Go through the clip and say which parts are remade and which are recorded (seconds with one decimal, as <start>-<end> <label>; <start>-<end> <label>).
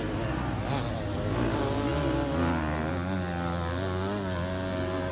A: 0.0-5.1 recorded